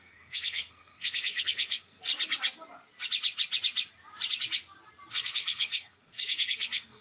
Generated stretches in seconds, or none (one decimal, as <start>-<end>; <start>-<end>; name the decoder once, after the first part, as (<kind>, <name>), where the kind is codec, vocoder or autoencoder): 0.0-2.1 (codec, SNAC); 5.1-7.0